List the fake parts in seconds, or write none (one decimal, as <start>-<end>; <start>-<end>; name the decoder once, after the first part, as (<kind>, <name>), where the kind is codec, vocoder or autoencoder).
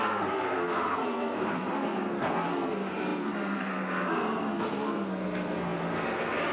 0.0-6.5 (codec, SNAC)